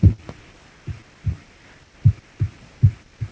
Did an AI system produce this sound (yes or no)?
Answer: no